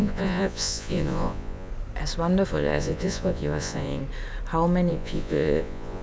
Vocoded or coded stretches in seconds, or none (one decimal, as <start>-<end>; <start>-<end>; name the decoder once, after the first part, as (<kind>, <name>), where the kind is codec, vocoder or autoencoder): 0.0-1.7 (vocoder, Vocos); 2.5-4.0; 4.9-6.0